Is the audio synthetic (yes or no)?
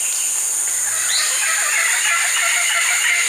no